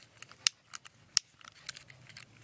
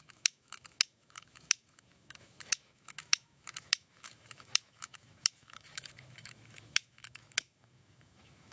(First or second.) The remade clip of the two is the second